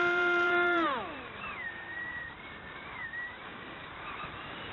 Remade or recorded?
remade